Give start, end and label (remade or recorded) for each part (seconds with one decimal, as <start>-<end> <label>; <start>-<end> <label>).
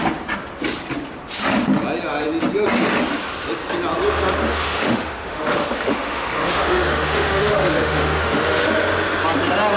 0.0-4.5 recorded; 4.5-8.7 remade; 8.7-9.8 recorded